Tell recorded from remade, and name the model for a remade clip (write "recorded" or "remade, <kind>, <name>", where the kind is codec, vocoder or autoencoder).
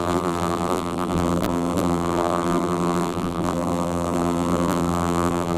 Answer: remade, vocoder, BigVGAN v2